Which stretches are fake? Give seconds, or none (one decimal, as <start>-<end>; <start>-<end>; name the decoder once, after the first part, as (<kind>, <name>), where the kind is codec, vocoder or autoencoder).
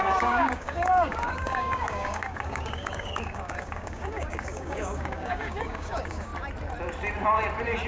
0.0-6.3 (codec, DAC)